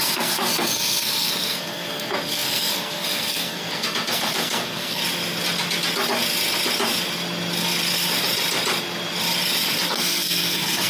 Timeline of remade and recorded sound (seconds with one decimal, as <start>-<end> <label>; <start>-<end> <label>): 0.0-5.0 remade; 5.0-9.9 recorded; 9.9-10.9 remade